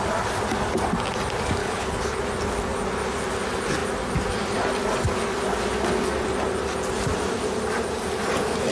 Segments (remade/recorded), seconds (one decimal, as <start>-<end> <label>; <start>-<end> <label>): 0.0-1.6 recorded; 1.6-2.2 remade; 2.2-8.7 recorded